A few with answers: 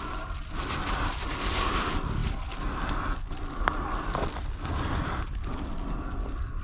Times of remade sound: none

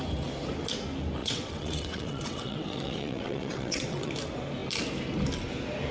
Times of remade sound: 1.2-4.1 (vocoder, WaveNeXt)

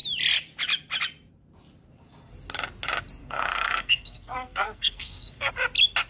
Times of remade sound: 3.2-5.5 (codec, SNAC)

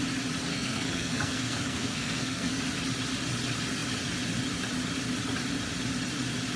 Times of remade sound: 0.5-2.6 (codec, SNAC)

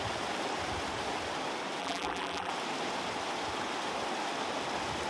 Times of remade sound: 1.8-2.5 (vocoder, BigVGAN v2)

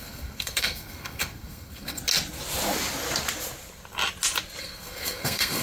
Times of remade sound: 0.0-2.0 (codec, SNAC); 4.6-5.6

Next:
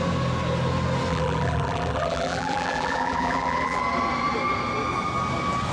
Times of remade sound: 1.1-3.8 (vocoder, BigVGAN v2)

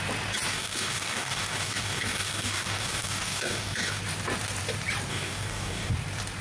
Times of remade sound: 0.5-4.0 (codec, DAC); 5.1-5.9